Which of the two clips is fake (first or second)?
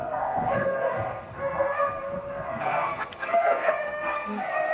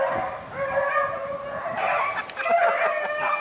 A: first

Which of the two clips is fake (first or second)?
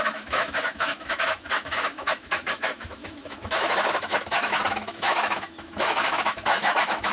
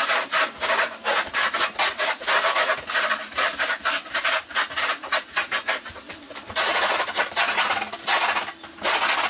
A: first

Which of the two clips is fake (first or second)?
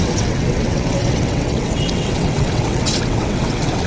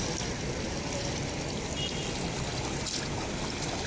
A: first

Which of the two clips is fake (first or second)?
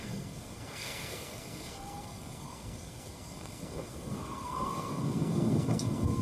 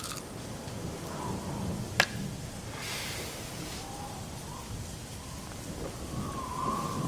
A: first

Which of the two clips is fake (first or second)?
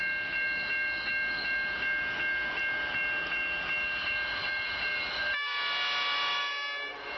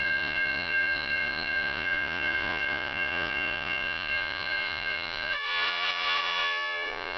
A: second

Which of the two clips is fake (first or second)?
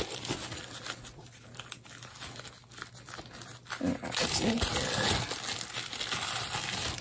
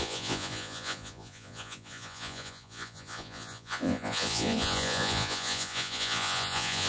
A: second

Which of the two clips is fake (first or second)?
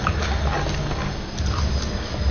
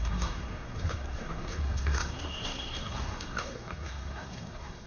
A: second